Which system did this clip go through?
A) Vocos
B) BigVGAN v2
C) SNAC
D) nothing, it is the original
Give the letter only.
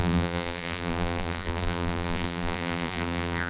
B